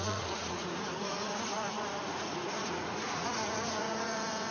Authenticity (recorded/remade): remade